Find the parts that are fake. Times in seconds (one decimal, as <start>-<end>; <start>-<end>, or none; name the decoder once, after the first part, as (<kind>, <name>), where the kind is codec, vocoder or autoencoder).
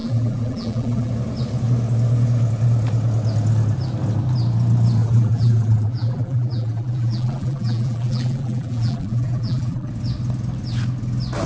0.0-1.1 (vocoder, BigVGAN v2); 5.0-9.9